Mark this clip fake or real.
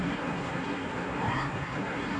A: fake